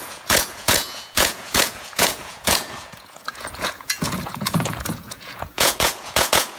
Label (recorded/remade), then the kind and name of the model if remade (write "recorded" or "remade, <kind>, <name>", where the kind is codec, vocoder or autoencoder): remade, vocoder, Vocos